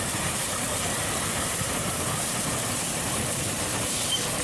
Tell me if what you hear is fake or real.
fake